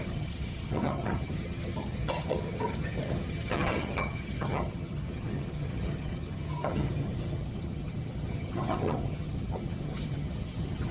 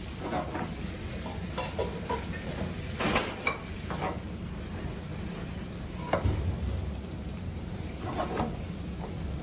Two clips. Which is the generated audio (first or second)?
first